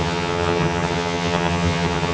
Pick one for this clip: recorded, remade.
remade